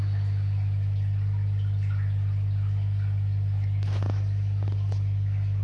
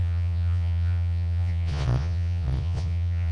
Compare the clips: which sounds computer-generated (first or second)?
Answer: second